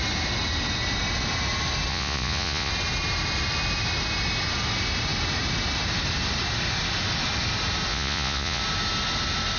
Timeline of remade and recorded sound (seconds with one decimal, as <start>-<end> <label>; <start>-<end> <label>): 0.0-1.9 recorded; 1.9-2.7 remade; 2.7-7.9 recorded; 7.9-8.6 remade; 8.6-9.6 recorded

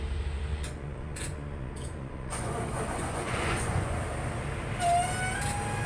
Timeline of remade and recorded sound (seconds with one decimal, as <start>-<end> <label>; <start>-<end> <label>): 0.0-0.5 recorded; 0.5-4.0 remade; 4.0-5.9 recorded

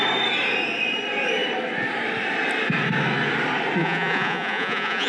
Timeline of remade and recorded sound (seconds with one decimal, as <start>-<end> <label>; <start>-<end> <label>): 0.0-3.8 recorded; 3.8-5.1 remade

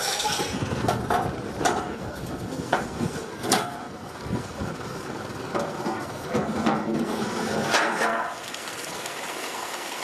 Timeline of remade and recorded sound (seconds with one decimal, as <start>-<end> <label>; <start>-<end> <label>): 0.0-1.0 remade; 1.0-1.7 recorded; 1.7-10.0 remade

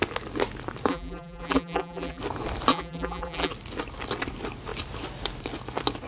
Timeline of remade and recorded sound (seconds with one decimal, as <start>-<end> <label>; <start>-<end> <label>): 0.0-0.9 recorded; 0.9-2.2 remade; 2.2-2.7 recorded; 2.7-3.5 remade; 3.5-6.1 recorded

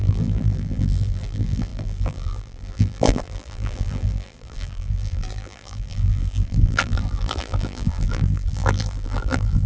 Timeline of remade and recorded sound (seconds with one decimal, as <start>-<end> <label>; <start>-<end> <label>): 0.0-9.7 remade

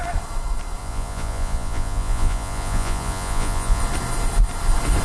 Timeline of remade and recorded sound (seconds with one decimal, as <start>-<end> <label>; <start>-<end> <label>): 0.0-0.8 recorded; 0.8-3.8 remade; 3.8-5.0 recorded

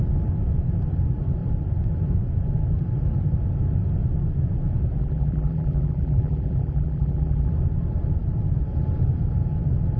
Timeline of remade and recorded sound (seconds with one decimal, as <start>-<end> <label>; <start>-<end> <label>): 0.0-5.0 recorded; 5.0-7.5 remade; 7.5-10.0 recorded